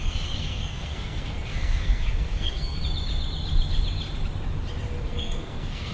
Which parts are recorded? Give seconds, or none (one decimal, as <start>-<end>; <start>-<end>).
2.8-5.0